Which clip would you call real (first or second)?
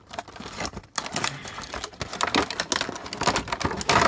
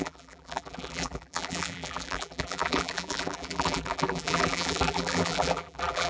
first